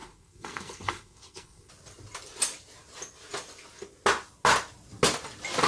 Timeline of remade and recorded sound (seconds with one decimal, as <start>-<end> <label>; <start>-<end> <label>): 0.0-1.7 remade; 1.7-5.7 recorded